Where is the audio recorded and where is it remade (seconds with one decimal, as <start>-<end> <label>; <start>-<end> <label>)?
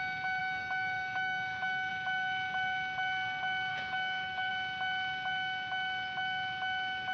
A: 0.0-0.4 recorded; 0.4-1.9 remade; 1.9-3.7 recorded; 3.7-4.5 remade; 4.5-7.1 recorded